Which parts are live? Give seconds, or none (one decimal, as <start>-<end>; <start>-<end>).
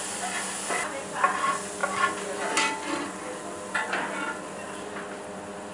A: 0.0-5.7